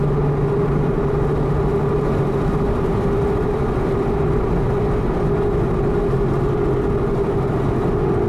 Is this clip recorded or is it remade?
recorded